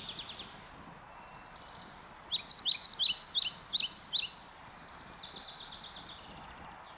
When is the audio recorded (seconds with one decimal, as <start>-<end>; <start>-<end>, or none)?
0.0-7.0